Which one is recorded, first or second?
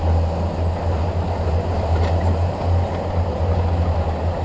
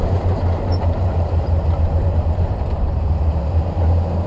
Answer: first